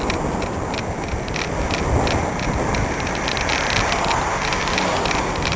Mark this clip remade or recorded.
recorded